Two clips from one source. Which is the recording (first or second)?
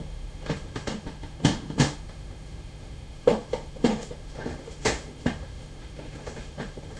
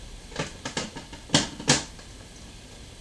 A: second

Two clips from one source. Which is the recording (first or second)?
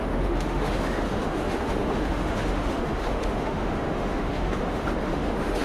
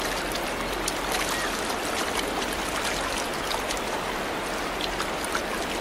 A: second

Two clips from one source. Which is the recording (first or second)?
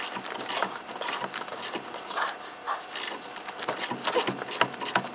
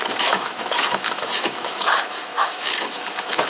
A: first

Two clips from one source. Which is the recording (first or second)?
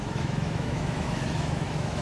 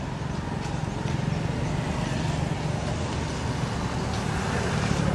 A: second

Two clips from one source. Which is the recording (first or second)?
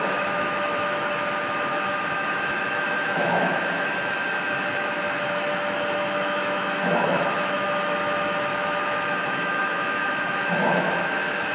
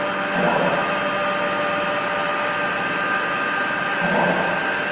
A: second